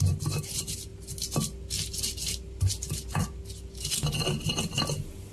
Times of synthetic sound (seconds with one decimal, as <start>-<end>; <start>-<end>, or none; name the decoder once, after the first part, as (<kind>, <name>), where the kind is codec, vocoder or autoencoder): none